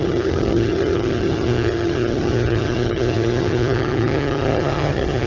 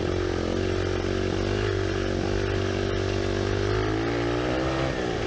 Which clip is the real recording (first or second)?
second